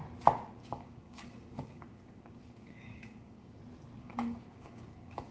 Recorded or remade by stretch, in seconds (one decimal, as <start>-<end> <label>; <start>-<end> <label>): 0.0-0.6 recorded; 0.6-3.6 remade; 3.6-4.0 recorded; 4.0-5.3 remade